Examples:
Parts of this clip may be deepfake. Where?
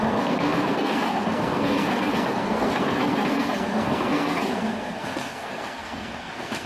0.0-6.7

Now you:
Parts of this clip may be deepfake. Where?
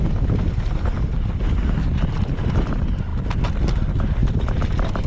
1.6-2.2